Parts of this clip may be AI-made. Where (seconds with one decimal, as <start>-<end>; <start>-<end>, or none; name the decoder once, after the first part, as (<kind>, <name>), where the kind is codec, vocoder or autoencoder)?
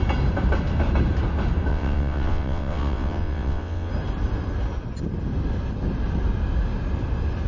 1.7-3.9 (vocoder, WaveNeXt)